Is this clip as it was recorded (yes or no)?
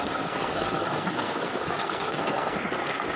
no